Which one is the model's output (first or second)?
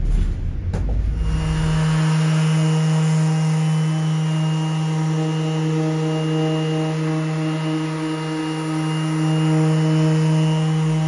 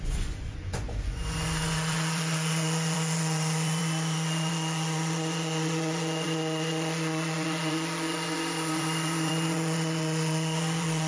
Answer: second